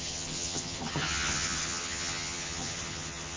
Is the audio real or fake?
fake